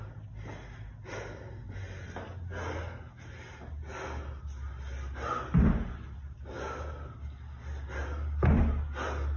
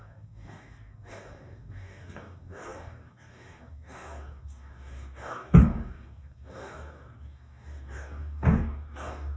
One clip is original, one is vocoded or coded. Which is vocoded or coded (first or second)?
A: second